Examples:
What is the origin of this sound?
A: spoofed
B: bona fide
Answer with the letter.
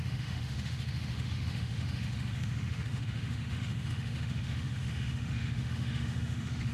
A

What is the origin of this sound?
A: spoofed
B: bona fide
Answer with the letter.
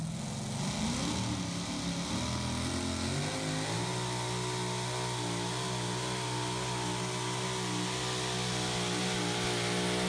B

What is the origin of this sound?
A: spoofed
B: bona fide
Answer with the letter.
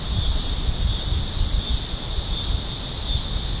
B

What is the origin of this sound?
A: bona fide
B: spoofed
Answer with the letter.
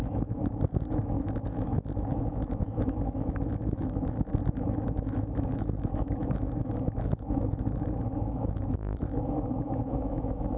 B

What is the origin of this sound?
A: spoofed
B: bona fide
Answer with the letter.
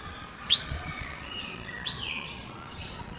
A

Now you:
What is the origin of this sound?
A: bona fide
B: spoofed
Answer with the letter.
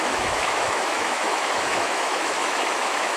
B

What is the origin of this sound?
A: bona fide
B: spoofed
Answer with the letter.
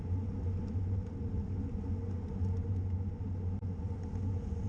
A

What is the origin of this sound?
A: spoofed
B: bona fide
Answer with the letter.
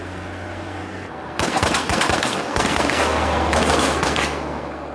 A